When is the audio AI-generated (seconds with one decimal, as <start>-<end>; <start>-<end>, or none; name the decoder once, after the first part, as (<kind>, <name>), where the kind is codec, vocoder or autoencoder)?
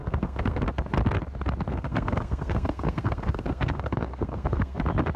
0.0-0.6 (codec, SNAC); 1.7-4.8